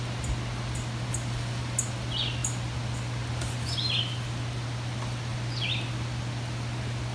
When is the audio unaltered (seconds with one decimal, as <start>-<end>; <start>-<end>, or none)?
0.0-7.1